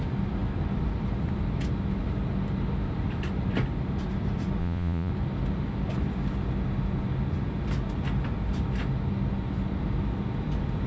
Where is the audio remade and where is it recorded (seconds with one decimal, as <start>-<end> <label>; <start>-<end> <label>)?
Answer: 0.0-4.6 recorded; 4.6-5.1 remade; 5.1-10.9 recorded